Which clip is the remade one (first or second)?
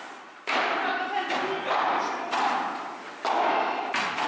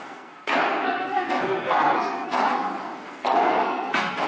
second